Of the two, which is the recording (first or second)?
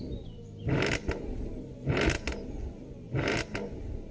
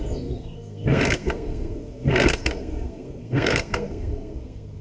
first